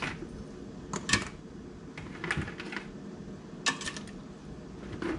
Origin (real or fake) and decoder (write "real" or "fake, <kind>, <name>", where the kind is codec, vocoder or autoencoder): real